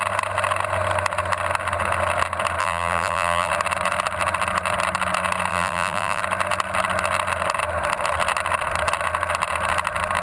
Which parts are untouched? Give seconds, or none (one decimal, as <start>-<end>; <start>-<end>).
0.0-2.6; 3.5-5.5; 6.2-10.2